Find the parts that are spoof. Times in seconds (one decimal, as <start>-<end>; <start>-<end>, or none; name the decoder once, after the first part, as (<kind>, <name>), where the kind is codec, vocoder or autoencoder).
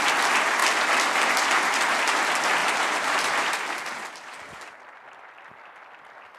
2.6-3.6 (vocoder, BigVGAN v2)